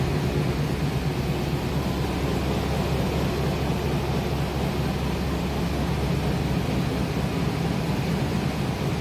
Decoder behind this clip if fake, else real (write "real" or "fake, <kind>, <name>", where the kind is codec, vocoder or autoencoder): real